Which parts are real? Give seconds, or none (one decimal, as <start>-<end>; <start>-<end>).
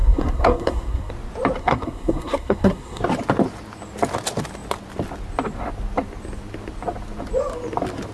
1.1-1.6; 3.0-8.1